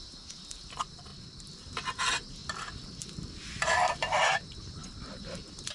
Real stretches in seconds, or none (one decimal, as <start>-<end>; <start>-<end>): 1.1-1.6; 2.4-3.9